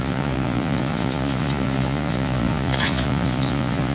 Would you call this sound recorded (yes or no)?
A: no